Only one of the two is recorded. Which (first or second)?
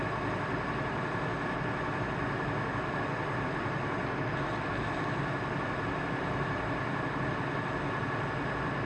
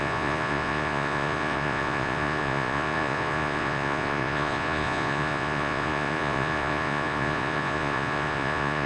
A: first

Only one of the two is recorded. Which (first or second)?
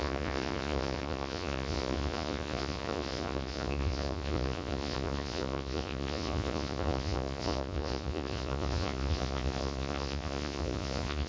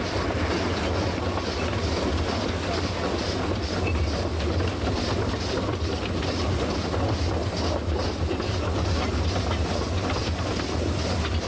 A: second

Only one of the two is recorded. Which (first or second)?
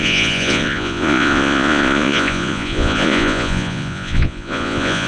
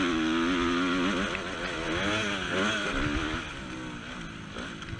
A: second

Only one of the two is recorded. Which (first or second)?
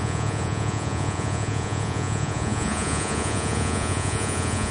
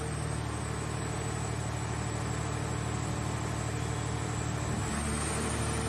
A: second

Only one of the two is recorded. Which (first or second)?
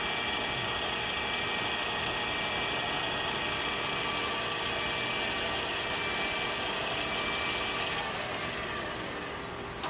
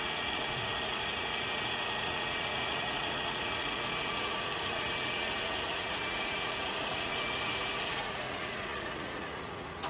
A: first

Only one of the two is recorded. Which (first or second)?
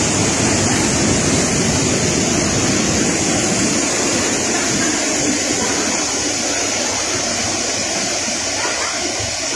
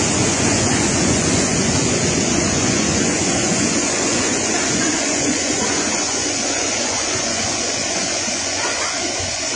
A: first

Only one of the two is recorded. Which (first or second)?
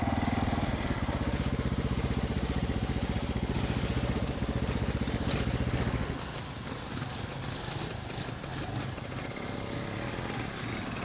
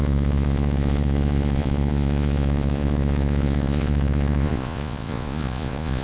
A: first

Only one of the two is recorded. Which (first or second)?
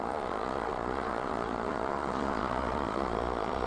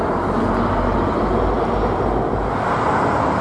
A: second